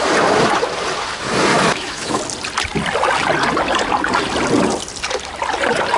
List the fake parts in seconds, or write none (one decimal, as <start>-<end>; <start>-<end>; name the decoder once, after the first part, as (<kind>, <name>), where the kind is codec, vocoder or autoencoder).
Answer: 1.5-2.2 (autoencoder, DAC-VAE)